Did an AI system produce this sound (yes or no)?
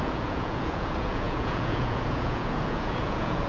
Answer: yes